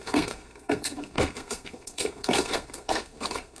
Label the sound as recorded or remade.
remade